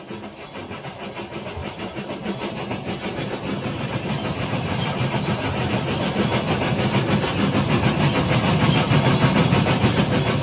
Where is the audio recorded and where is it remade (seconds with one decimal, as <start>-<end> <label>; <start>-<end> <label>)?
0.0-1.6 recorded; 1.6-5.2 remade; 5.2-9.4 recorded; 9.4-10.0 remade; 10.0-10.4 recorded